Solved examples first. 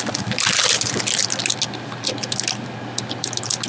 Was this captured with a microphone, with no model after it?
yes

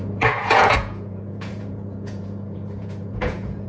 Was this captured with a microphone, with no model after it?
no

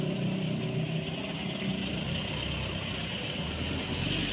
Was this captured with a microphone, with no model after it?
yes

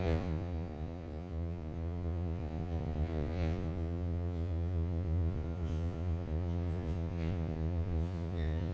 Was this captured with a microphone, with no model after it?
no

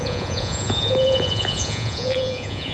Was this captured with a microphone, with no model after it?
no